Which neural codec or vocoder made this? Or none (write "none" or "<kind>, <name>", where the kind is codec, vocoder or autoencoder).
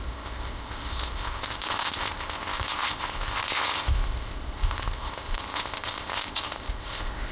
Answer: codec, ZipCodec